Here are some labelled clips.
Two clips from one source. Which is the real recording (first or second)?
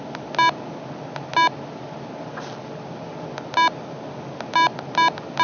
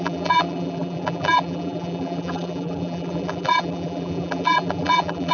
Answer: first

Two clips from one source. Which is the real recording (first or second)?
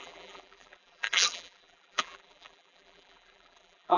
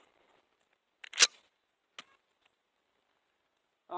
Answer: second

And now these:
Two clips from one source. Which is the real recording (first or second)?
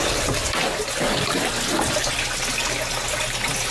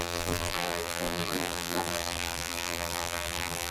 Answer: first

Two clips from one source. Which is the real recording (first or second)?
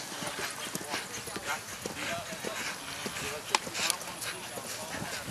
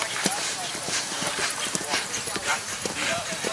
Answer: first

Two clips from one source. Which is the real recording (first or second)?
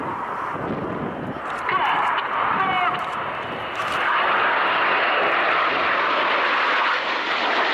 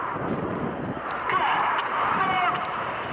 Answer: first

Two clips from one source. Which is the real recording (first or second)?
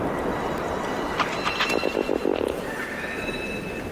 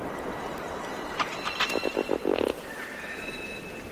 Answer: first